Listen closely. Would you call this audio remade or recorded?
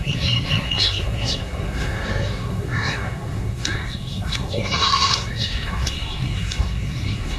remade